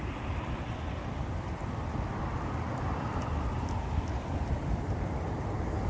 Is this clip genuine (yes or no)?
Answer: no